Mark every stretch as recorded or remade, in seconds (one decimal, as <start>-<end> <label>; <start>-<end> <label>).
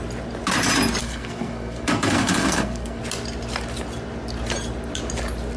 0.0-1.0 recorded; 1.0-3.0 remade; 3.0-5.6 recorded